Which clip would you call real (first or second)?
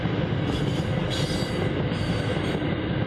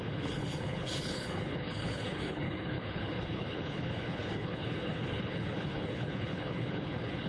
first